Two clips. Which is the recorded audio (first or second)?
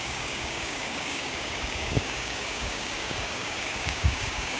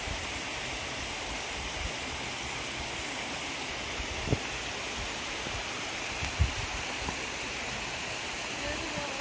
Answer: second